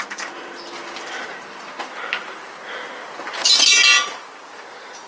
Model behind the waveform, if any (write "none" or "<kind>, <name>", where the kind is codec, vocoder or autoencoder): none